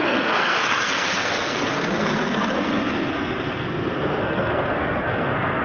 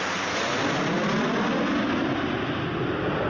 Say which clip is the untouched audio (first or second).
second